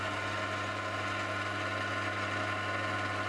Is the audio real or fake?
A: real